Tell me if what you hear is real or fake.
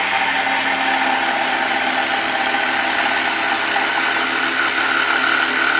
real